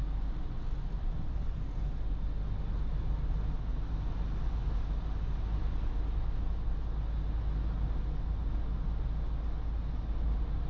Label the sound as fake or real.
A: real